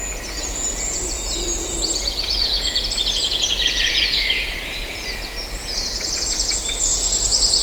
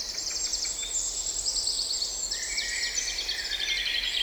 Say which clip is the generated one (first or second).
first